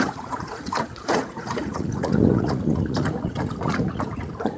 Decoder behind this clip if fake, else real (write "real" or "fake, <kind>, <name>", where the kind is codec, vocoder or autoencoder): fake, vocoder, Vocos